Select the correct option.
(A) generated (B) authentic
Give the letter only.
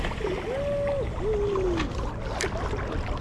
B